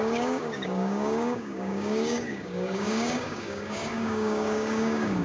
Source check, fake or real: fake